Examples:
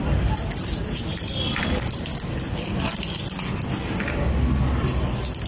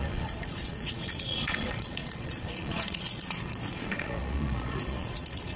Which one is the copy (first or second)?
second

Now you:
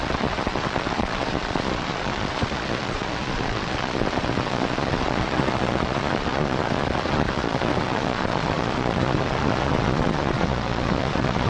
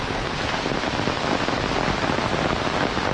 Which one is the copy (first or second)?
first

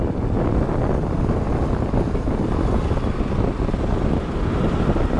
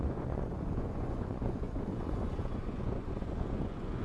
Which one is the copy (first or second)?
second